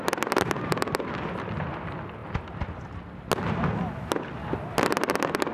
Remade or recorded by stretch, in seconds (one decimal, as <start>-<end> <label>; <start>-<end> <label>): 0.0-5.5 recorded

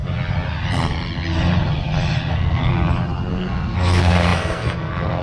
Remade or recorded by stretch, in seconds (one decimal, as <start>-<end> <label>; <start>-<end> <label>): 0.0-2.3 recorded; 2.3-2.7 remade; 2.7-3.3 recorded; 3.3-5.2 remade

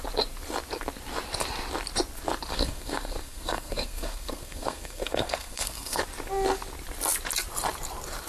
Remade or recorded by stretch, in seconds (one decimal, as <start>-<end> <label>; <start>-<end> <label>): 0.0-2.5 recorded; 2.5-6.0 remade; 6.0-8.3 recorded

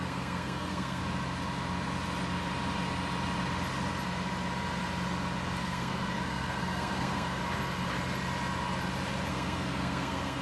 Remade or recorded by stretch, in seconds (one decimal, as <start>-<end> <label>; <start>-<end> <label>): 0.0-1.0 remade; 1.0-5.6 recorded; 5.6-7.4 remade; 7.4-9.3 recorded; 9.3-10.4 remade

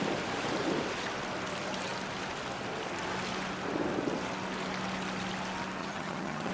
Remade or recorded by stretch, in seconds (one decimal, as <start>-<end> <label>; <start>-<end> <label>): 0.0-5.8 recorded; 5.8-6.5 remade

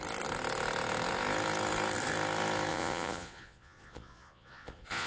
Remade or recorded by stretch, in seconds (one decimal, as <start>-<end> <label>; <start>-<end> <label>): 0.0-2.7 recorded; 2.7-5.1 remade

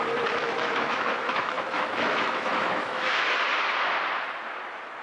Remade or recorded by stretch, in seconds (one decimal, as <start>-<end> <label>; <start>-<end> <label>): 0.0-0.4 recorded; 0.4-3.4 remade; 3.4-5.0 recorded

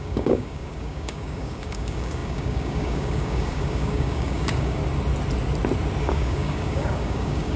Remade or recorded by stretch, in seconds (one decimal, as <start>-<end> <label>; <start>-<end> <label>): 0.0-4.8 remade; 4.8-6.0 recorded; 6.0-7.6 remade